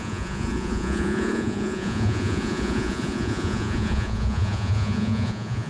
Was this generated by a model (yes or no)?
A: yes